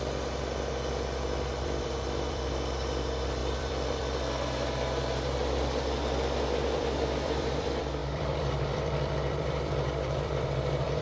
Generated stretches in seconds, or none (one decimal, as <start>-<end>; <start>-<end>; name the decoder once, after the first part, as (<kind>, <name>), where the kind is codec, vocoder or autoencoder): 0.0-11.0 (vocoder, BigVGAN v2)